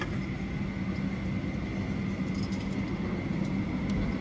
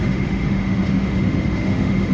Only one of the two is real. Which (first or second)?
first